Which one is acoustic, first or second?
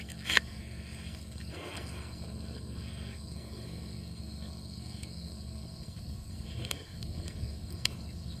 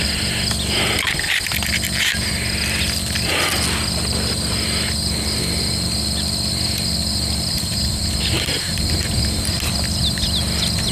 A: second